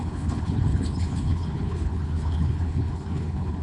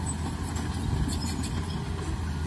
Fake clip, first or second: first